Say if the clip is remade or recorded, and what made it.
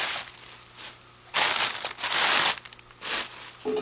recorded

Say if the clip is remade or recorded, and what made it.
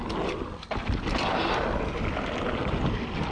recorded